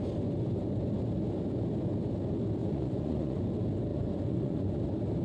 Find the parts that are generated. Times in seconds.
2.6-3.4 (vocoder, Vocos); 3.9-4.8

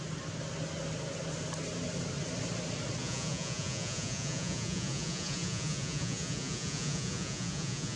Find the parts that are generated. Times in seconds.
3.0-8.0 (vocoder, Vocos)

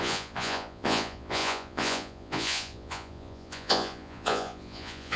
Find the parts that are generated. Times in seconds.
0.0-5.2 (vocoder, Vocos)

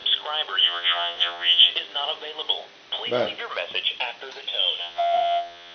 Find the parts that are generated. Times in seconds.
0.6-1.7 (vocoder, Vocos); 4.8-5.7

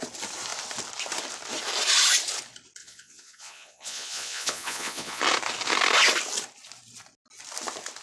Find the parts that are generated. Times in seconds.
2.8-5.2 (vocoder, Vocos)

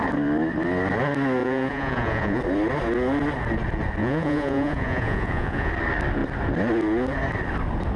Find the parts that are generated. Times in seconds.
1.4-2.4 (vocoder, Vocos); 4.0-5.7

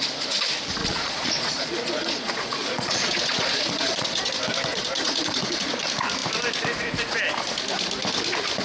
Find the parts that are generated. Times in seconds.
0.8-4.3 (vocoder, Vocos); 4.7-5.8